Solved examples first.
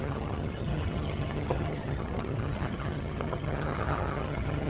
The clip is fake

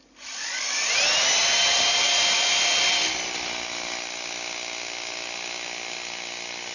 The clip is real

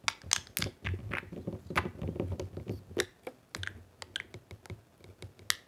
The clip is real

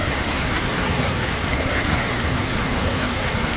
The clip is fake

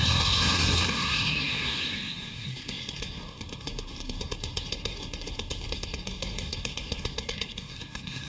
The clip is fake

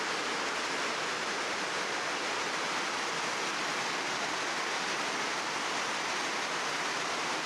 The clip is real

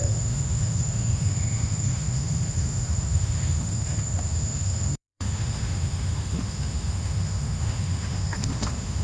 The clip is fake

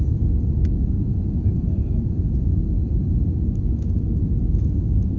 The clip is real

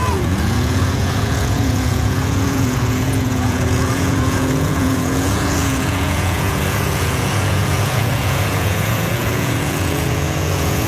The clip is fake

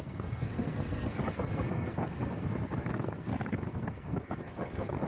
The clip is fake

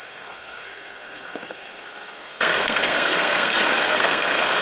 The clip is fake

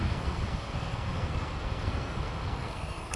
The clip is fake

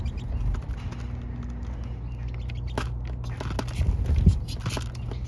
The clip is real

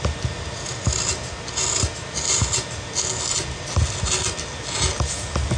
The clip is real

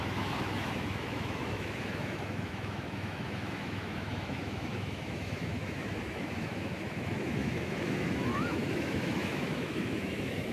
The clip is fake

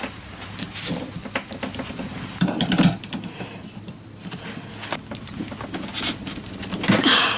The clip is real